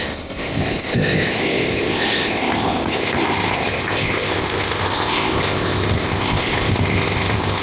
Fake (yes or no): yes